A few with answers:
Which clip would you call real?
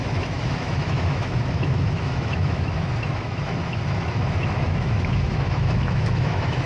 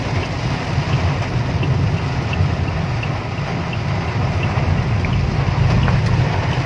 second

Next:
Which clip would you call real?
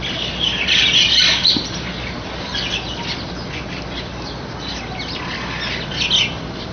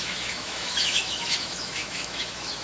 first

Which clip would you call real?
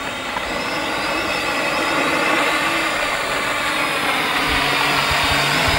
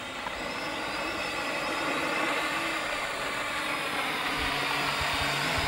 first